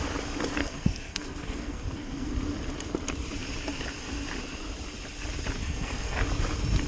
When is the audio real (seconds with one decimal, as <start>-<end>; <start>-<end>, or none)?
0.0-0.6; 2.3-5.6; 6.2-6.9